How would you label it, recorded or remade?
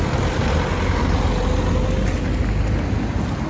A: recorded